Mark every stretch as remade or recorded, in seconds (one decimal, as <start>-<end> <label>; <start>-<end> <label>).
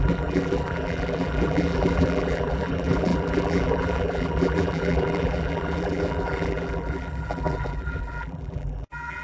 0.0-9.2 remade